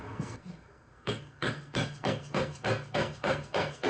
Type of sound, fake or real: fake